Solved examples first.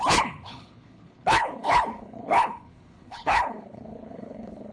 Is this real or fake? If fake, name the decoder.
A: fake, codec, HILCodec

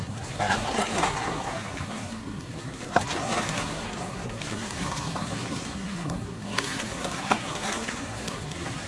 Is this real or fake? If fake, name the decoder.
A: fake, codec, SNAC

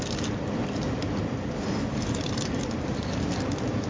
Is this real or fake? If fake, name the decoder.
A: real